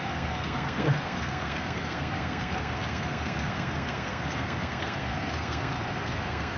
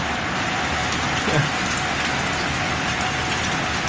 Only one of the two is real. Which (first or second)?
second